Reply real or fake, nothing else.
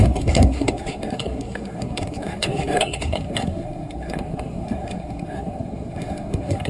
fake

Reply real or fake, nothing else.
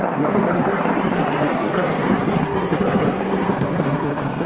fake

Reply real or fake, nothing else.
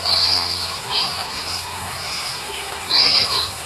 fake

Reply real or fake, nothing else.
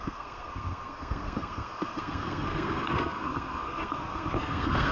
fake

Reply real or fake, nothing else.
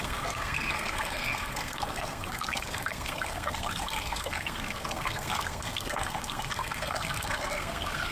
fake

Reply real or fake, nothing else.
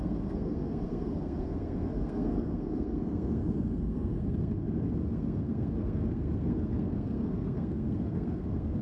fake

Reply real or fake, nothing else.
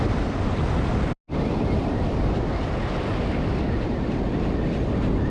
real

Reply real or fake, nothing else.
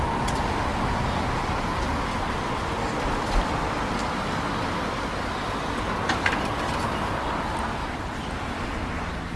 real